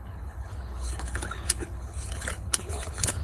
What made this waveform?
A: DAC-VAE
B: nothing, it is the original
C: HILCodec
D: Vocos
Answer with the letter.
C